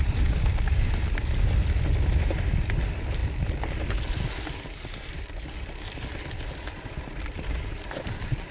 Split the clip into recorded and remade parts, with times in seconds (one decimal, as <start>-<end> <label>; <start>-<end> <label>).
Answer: 0.0-8.5 recorded